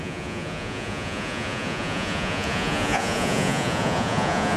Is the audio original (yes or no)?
no